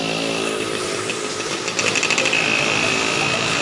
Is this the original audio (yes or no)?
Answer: yes